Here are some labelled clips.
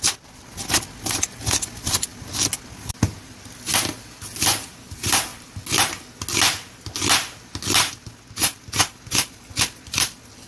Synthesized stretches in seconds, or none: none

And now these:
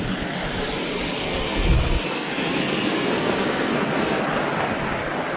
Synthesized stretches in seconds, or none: 1.3-4.2 (codec, SNAC)

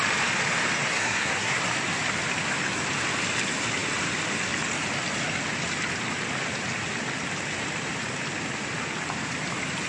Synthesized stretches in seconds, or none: 0.9-1.6 (codec, SNAC)

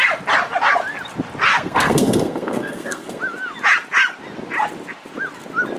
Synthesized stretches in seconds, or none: 1.5-3.2 (codec, SNAC)

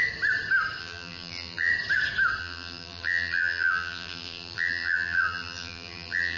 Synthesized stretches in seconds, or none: 0.8-1.7 (vocoder, BigVGAN v2); 2.4-6.4

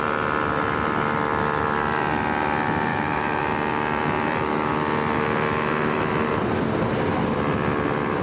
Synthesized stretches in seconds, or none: 2.9-3.4 (autoencoder, DAC-VAE)